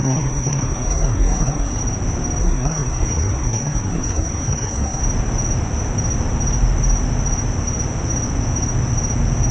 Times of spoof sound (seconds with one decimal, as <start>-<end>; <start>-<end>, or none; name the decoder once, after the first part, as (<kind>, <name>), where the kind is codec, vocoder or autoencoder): 0.0-1.8 (codec, SNAC); 2.4-5.0